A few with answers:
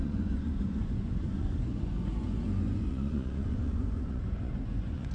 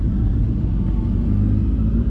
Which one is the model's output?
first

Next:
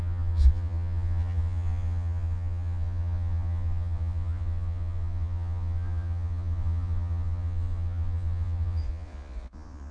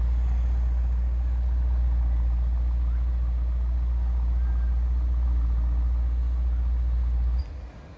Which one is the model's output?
first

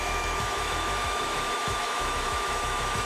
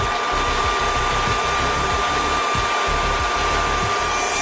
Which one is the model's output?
first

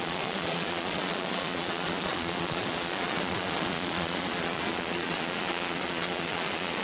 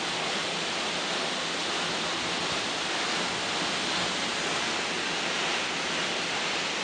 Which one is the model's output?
first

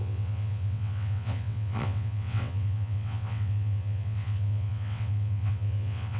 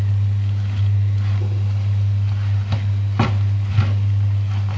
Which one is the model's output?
first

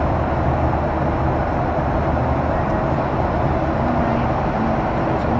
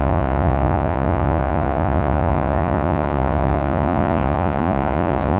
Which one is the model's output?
second